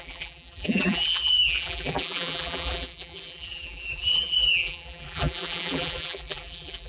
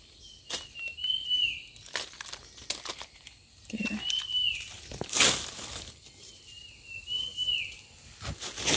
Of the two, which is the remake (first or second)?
first